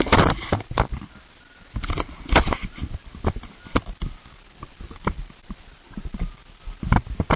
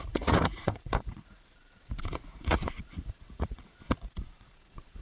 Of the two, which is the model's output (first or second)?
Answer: second